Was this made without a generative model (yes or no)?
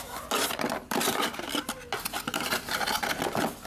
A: yes